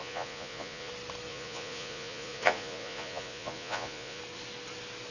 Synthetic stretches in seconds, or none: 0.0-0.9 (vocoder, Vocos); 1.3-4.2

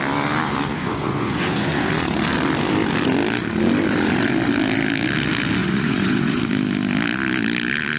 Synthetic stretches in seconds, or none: 0.7-1.9 (vocoder, Vocos); 5.6-6.4

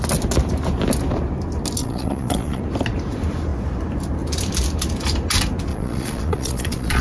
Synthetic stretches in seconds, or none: 1.8-2.6 (vocoder, Vocos); 5.7-7.0

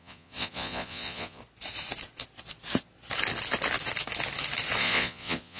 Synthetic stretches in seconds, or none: 0.0-1.4 (vocoder, Vocos); 4.8-5.6